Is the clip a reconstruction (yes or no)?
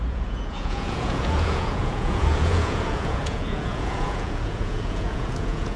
yes